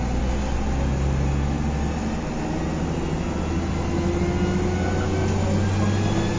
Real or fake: real